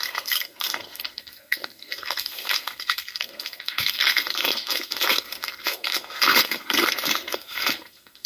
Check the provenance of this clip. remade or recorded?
remade